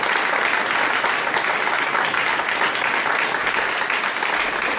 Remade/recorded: recorded